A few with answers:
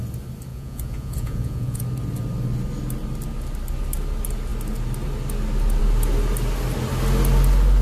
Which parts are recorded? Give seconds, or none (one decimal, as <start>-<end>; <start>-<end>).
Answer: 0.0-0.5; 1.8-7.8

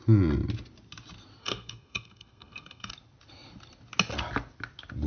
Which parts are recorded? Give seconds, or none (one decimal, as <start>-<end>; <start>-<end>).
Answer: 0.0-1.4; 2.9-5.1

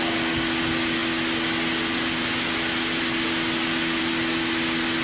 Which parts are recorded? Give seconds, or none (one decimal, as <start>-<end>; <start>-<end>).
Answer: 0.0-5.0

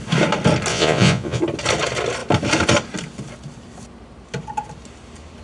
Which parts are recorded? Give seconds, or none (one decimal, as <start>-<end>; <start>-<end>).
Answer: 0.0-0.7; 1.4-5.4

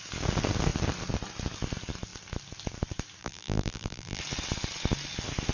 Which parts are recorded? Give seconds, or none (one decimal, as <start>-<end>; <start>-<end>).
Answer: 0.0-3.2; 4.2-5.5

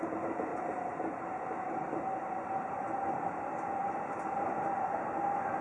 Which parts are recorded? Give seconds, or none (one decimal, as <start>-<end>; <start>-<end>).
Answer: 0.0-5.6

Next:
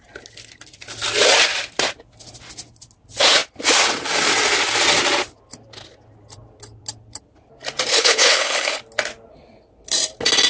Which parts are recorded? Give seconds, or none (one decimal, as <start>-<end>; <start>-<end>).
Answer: 0.0-7.9; 8.8-10.5

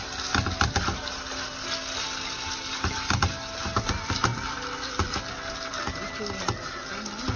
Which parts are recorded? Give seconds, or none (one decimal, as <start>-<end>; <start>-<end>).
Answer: 0.0-7.4